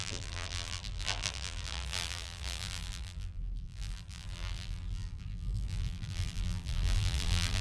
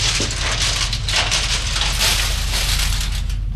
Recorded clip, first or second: second